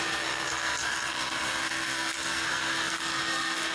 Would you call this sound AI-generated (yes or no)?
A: yes